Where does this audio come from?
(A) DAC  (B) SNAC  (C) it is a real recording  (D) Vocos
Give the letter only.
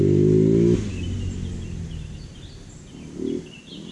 C